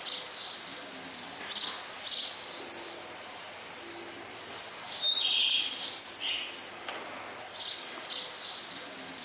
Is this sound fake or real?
real